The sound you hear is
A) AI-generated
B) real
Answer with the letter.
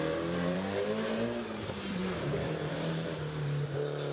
A